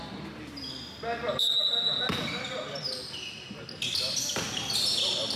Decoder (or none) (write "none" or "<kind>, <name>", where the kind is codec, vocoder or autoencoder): none